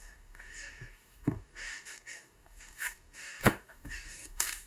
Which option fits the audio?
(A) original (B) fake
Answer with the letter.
B